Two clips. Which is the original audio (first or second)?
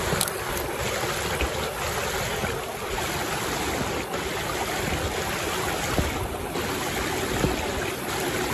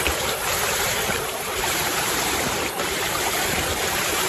first